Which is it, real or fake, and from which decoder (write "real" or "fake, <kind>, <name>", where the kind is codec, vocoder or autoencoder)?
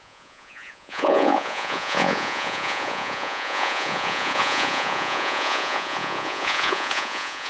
fake, vocoder, Vocos